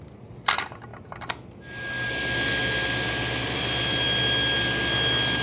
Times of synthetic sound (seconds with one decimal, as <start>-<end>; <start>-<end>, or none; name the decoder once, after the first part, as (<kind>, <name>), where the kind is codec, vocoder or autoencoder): none